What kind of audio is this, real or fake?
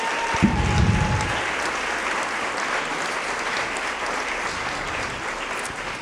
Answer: real